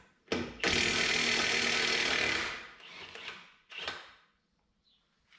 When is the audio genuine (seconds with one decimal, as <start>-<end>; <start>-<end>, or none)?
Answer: 0.0-2.9; 3.8-5.4